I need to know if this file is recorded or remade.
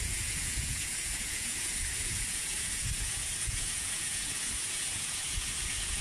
remade